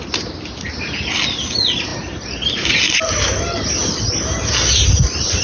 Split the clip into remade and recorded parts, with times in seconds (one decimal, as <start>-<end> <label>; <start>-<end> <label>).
0.0-5.4 recorded